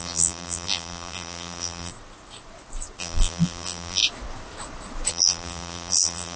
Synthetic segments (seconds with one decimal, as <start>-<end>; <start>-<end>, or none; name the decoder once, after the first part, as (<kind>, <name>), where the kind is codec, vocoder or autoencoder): 0.0-1.9 (vocoder, BigVGAN v2); 3.0-4.0; 5.1-6.4